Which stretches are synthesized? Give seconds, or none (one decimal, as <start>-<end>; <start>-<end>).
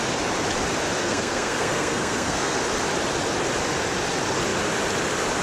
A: 1.0-2.6